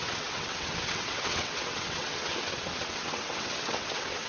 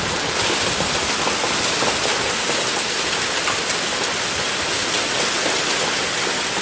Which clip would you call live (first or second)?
second